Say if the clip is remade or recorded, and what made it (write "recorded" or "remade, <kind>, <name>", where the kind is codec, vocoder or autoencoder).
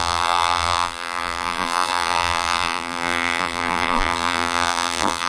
remade, vocoder, BigVGAN v2